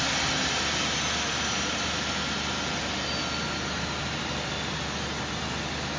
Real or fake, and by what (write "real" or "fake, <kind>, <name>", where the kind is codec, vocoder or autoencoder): real